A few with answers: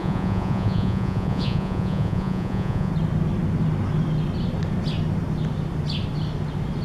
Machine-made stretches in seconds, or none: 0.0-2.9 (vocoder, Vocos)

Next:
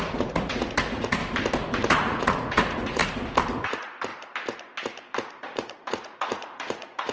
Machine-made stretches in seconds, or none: 0.0-1.2 (vocoder, Vocos); 1.9-3.0; 3.6-4.1; 5.3-7.1

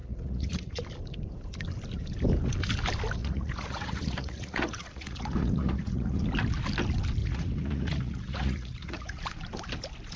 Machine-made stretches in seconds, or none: 0.0-0.8 (vocoder, Vocos); 3.2-6.2; 7.2-9.4